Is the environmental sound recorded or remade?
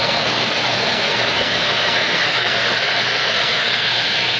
remade